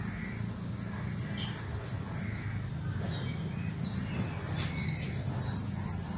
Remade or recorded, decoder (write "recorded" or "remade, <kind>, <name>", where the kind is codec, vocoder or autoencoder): recorded